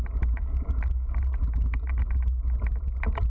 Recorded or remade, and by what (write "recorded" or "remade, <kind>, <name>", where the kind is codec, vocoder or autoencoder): remade, vocoder, BigVGAN v2